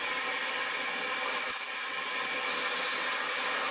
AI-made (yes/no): no